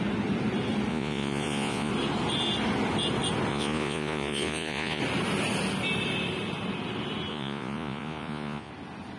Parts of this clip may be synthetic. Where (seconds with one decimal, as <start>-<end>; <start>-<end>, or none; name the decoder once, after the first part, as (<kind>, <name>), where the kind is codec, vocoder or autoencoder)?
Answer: 0.9-1.9 (vocoder, Vocos); 3.5-5.0; 7.3-8.7